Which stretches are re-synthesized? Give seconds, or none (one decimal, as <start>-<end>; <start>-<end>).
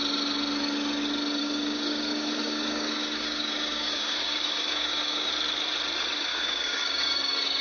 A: 1.4-5.3; 6.3-7.6